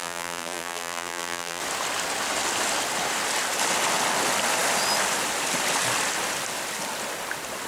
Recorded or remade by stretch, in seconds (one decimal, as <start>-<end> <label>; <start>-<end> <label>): 0.0-1.6 remade; 1.6-7.7 recorded